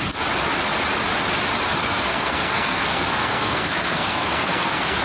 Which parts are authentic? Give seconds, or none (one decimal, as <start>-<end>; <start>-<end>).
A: 0.0-1.8